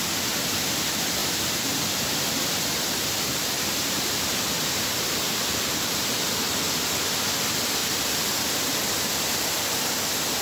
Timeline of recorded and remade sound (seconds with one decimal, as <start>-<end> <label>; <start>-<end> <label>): 0.0-1.2 recorded; 1.2-6.4 remade; 6.4-7.8 recorded; 7.8-8.6 remade; 8.6-10.4 recorded